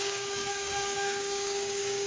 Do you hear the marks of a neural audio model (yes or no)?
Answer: yes